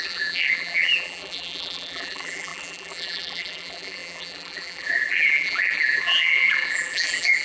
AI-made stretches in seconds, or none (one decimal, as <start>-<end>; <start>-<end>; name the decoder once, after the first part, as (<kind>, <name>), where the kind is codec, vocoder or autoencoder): 0.0-7.4 (vocoder, BigVGAN v2)